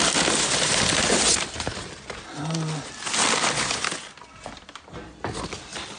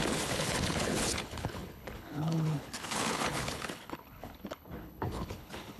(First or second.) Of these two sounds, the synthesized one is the second